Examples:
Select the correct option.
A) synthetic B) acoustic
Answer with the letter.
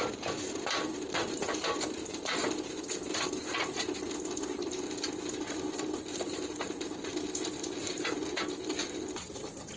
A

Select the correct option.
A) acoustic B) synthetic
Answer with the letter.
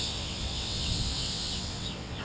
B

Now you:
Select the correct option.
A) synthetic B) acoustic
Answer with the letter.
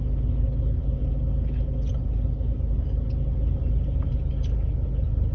B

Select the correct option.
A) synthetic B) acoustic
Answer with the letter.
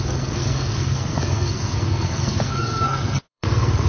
A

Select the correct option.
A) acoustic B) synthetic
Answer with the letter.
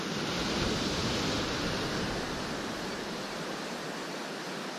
A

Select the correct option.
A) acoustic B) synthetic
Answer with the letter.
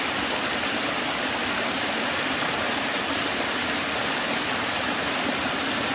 A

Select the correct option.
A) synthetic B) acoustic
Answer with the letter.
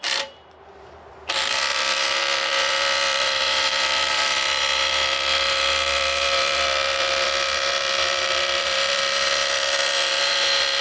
A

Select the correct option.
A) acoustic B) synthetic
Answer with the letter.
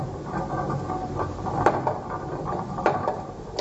B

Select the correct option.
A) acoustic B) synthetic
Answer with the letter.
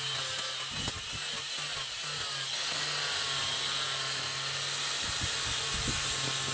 A